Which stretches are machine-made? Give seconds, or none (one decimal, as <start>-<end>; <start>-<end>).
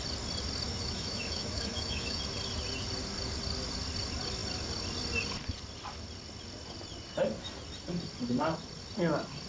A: 0.7-2.2